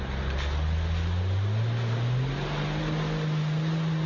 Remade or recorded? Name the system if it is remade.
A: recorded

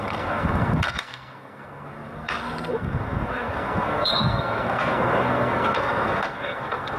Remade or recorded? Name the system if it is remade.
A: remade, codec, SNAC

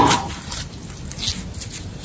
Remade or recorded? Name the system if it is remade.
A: recorded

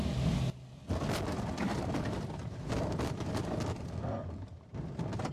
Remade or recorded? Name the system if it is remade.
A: recorded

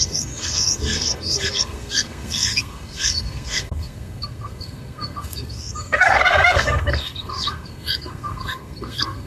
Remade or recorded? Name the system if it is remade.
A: remade, codec, SNAC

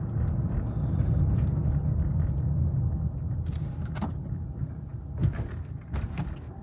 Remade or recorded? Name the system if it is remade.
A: recorded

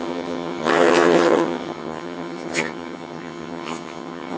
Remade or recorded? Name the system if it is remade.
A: remade, vocoder, HiFi-GAN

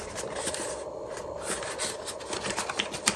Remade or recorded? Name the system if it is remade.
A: recorded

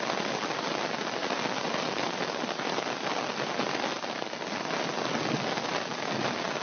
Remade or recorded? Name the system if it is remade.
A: recorded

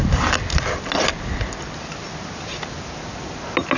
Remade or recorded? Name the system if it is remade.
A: recorded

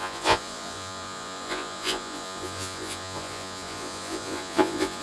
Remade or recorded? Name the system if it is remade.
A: remade, vocoder, Vocos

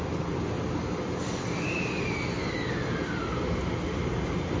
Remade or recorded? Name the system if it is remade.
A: recorded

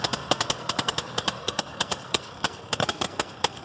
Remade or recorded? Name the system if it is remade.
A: remade, codec, SNAC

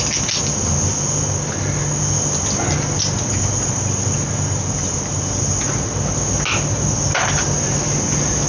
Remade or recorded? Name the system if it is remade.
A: recorded